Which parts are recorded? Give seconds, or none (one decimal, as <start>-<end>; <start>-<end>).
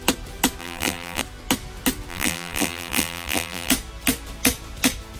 0.0-0.6; 1.2-2.1; 3.7-5.2